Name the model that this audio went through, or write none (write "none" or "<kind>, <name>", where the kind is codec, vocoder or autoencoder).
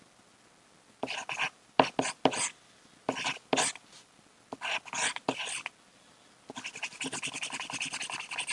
none